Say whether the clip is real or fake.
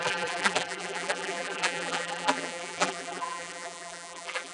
fake